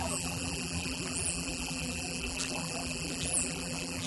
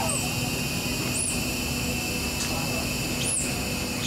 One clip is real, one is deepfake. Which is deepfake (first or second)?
first